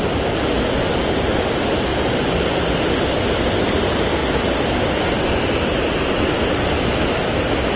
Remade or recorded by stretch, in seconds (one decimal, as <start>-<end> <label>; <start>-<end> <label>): 0.0-1.9 recorded; 1.9-3.4 remade; 3.4-4.2 recorded; 4.2-6.6 remade; 6.6-7.8 recorded